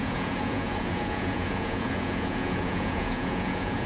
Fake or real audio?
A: fake